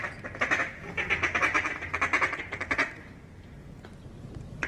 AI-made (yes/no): no